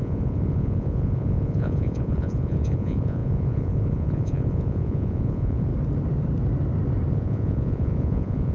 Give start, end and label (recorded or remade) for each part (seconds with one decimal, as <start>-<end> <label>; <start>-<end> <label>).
0.0-5.7 remade; 5.7-7.1 recorded; 7.1-8.5 remade